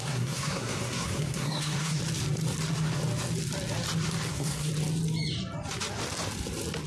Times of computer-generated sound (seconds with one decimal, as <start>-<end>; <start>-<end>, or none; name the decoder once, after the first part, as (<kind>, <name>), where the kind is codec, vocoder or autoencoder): 0.0-2.0 (codec, SNAC); 4.3-4.7